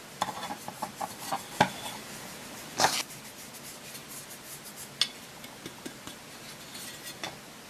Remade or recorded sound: recorded